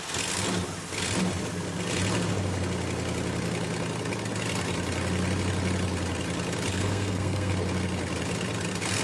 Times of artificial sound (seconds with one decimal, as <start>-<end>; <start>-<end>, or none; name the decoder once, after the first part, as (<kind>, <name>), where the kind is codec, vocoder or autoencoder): 6.7-7.5 (codec, SNAC)